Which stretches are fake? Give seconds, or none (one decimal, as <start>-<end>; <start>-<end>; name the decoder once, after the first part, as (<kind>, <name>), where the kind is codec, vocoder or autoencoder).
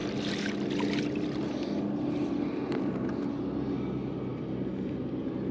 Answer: none